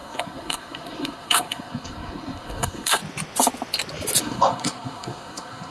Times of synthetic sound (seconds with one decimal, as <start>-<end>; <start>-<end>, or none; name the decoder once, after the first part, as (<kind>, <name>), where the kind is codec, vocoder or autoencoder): 0.0-3.0 (codec, SNAC); 4.2-5.7